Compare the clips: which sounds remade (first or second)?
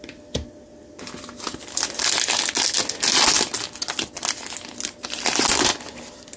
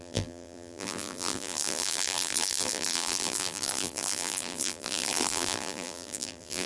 second